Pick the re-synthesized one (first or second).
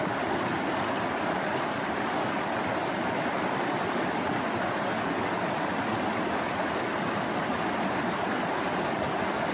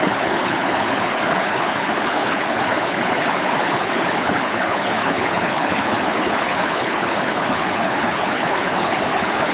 second